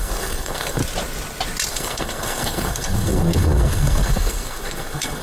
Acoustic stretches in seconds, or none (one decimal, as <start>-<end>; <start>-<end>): 0.8-1.7

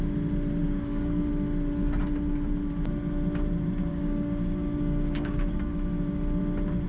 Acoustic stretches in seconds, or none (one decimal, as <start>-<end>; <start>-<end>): 0.0-0.6; 1.3-3.9; 6.4-6.9

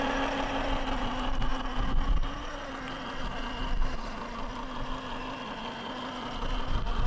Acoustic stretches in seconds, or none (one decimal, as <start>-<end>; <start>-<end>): 0.0-7.1

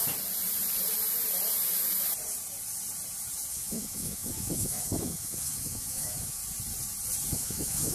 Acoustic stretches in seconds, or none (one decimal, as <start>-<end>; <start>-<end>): 0.0-3.5; 6.4-7.3

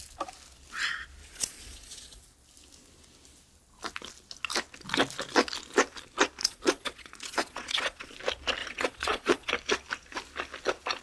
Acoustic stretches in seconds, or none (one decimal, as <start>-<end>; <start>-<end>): 0.0-1.2; 2.2-6.4; 8.1-8.6; 9.5-11.0

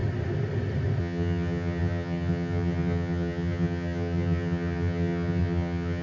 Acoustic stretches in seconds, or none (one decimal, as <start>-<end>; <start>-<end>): 0.0-1.0